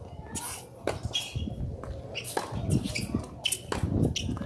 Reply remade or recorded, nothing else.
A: recorded